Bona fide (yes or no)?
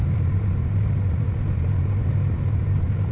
no